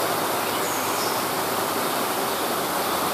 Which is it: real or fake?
real